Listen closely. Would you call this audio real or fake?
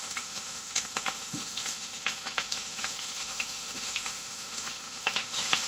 fake